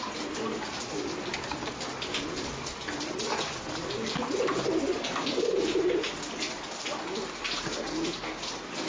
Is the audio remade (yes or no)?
no